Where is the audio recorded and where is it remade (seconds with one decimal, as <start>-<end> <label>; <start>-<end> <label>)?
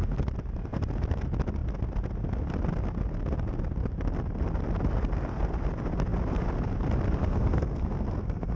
0.0-7.2 recorded; 7.2-8.6 remade